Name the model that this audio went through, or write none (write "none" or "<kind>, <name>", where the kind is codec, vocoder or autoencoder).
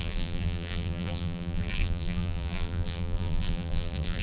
vocoder, BigVGAN v2